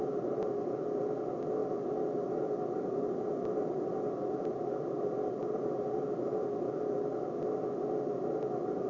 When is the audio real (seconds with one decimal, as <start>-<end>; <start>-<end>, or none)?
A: 0.0-8.9